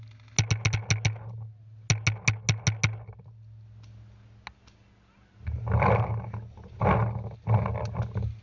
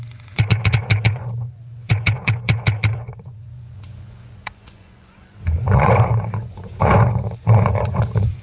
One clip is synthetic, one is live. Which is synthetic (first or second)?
second